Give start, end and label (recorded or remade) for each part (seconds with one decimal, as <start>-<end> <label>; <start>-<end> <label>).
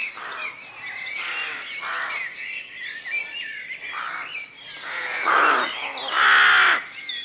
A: 0.0-2.1 recorded; 2.1-7.2 remade